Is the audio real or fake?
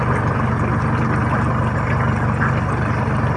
real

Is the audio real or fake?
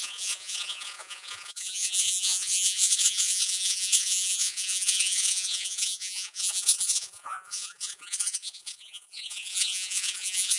fake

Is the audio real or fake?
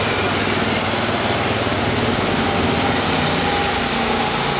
real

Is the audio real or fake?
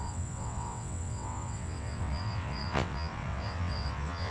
fake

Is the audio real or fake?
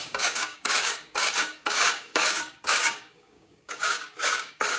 fake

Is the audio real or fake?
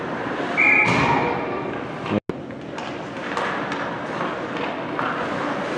real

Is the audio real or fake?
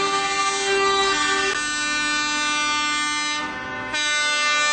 real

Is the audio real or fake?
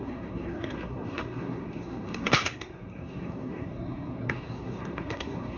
fake